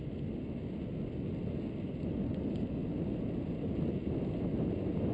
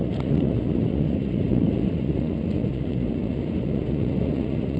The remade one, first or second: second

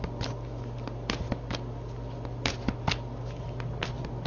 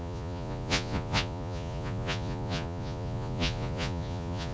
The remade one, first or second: second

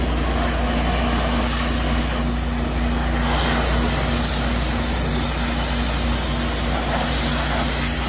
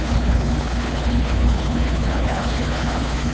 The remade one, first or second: second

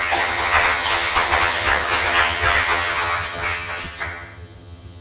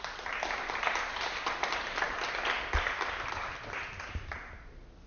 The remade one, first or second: first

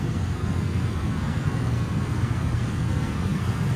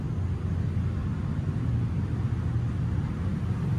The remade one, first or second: first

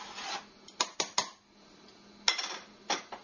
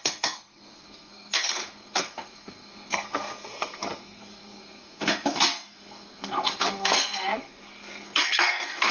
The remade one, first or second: second